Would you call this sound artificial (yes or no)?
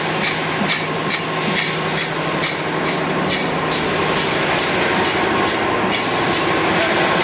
no